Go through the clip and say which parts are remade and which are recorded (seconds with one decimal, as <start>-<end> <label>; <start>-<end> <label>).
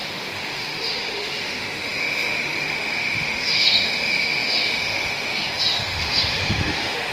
0.0-7.1 remade